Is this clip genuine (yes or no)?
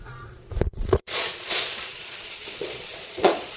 no